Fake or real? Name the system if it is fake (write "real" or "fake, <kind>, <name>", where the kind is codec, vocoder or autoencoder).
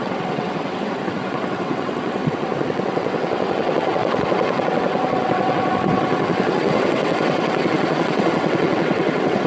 fake, vocoder, WaveNeXt